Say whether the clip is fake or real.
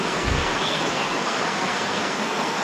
fake